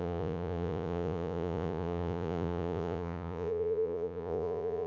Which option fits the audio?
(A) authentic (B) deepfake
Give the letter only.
B